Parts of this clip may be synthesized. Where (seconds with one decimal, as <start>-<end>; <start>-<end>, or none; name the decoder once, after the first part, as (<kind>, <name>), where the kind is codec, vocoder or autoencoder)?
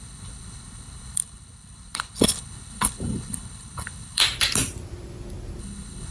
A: 0.0-4.2 (codec, HILCodec); 5.6-6.1